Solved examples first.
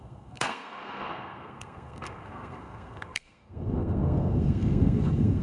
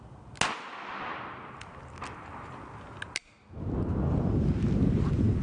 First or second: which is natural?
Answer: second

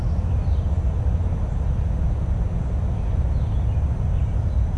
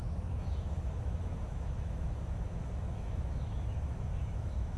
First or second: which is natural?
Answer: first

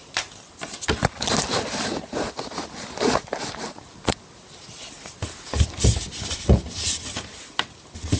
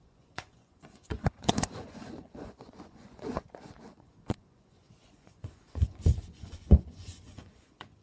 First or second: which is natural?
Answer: first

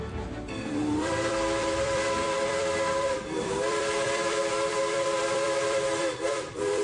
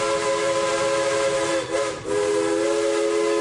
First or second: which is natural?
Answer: second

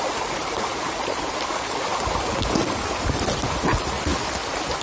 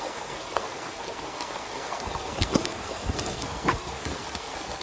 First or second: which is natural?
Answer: first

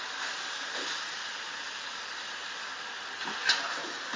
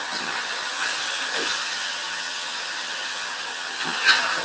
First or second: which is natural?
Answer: first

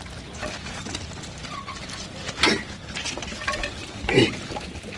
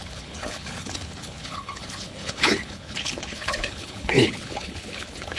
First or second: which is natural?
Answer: first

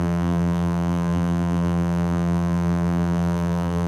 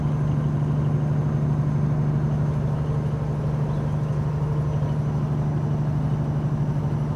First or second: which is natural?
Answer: second